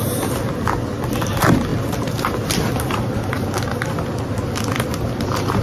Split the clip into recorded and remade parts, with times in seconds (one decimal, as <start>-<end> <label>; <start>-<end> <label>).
0.0-5.6 recorded